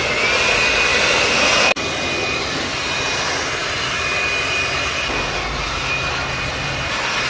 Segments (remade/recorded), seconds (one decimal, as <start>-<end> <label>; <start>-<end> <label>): 0.0-7.3 recorded